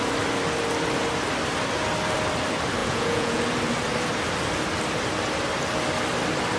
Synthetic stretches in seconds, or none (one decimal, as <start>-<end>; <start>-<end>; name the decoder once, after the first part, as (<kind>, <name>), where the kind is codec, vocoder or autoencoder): 2.8-3.4 (vocoder, Vocos)